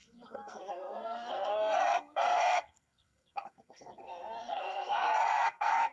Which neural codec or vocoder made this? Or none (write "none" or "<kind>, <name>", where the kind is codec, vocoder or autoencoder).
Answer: codec, SNAC